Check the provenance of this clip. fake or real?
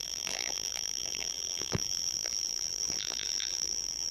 fake